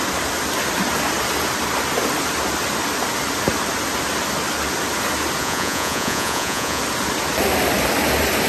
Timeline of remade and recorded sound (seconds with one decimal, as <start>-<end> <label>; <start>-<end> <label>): 0.0-5.4 recorded; 5.4-6.8 remade; 6.8-8.5 recorded